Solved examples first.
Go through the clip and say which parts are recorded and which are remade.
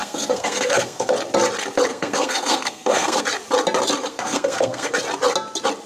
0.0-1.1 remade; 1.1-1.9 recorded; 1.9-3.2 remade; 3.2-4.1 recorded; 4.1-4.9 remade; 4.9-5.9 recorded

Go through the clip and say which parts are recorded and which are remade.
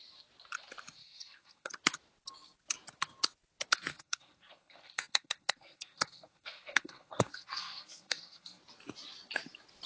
0.0-1.0 recorded; 1.0-1.7 remade; 1.7-3.9 recorded; 3.9-8.6 remade; 8.6-9.9 recorded